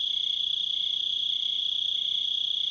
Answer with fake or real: real